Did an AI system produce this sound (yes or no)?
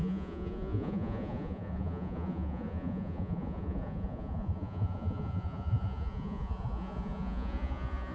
yes